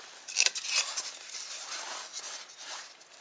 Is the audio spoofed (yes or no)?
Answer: no